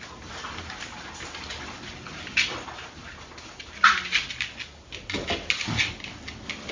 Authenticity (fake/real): real